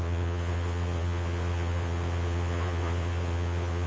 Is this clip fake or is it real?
fake